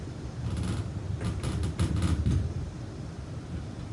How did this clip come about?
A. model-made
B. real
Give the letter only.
B